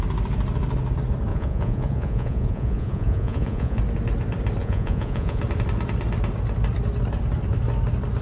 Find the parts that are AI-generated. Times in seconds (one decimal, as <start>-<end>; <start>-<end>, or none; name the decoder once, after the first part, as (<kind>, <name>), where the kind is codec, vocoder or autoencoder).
1.3-3.8 (vocoder, Vocos); 4.6-5.4